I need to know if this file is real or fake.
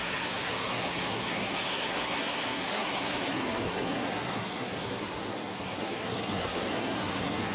fake